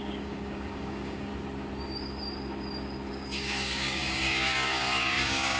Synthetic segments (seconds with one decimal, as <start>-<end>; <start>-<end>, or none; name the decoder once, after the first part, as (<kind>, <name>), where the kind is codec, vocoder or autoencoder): 0.0-1.3 (codec, DAC); 3.1-5.6